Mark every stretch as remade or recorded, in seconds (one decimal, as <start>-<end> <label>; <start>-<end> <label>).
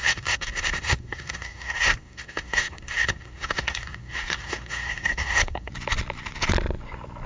0.0-5.7 remade; 5.7-7.3 recorded